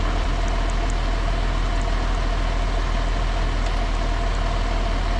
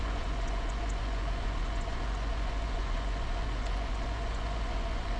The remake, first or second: second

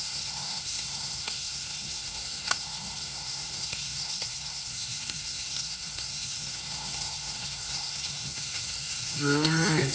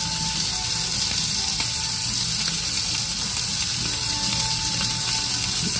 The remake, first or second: first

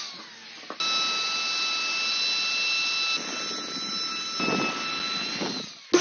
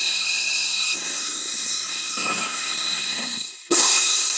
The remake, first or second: second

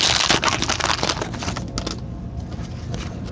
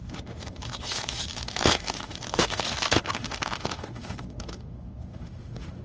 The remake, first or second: second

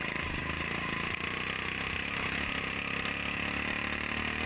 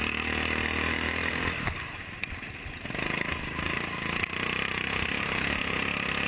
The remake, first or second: second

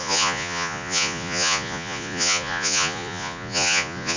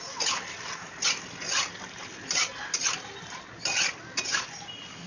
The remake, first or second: first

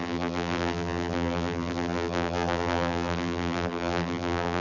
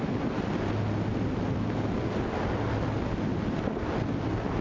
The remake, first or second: first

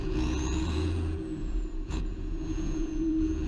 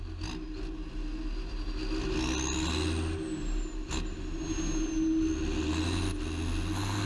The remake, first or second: first